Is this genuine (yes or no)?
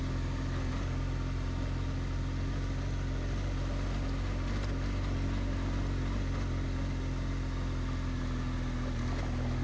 yes